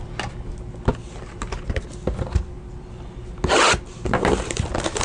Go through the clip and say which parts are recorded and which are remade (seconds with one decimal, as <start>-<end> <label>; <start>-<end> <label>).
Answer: 0.0-5.0 recorded